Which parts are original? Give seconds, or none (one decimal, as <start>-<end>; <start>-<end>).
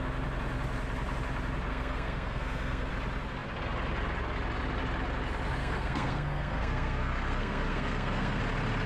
0.0-1.7; 2.9-5.6; 8.4-8.9